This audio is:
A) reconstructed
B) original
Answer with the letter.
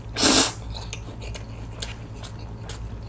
B